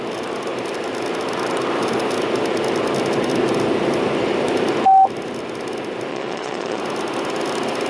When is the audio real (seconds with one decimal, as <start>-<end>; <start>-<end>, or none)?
0.0-6.1; 6.8-7.9